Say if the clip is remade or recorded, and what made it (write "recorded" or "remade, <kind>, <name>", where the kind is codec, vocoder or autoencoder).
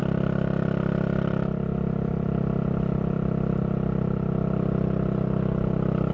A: recorded